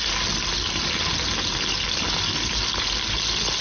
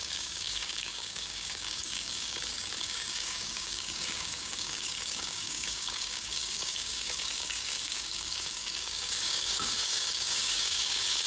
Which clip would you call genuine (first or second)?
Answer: first